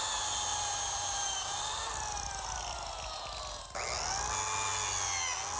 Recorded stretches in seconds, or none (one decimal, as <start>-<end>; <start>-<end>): 0.0-0.5; 1.9-5.6